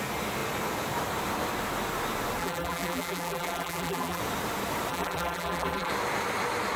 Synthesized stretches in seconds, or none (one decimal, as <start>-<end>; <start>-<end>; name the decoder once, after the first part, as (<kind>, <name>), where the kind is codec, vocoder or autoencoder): 2.4-4.2 (vocoder, BigVGAN v2); 4.9-5.9